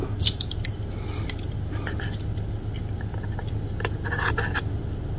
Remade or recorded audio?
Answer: recorded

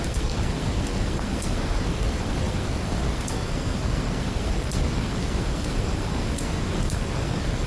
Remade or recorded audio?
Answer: remade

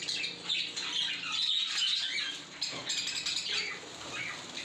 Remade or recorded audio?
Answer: recorded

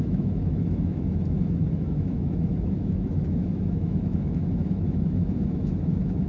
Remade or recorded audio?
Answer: remade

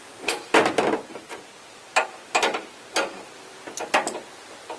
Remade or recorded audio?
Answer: recorded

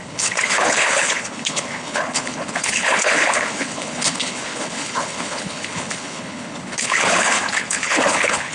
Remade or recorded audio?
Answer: remade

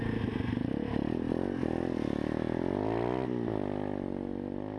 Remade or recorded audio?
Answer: recorded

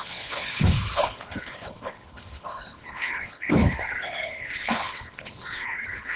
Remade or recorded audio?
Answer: remade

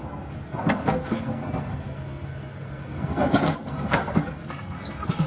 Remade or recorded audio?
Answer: remade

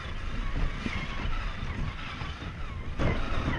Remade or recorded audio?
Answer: recorded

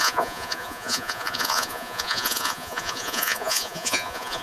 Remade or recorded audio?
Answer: remade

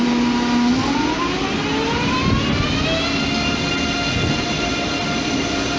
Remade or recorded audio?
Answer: recorded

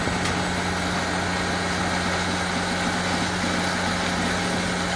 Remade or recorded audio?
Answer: recorded